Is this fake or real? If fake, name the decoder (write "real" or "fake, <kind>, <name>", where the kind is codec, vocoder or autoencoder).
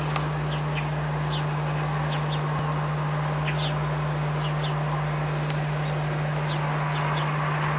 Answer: real